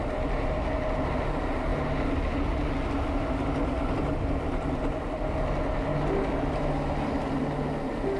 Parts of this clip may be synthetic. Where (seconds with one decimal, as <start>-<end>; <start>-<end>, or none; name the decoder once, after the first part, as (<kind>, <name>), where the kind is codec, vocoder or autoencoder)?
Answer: none